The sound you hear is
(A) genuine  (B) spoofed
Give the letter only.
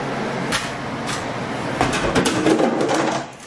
A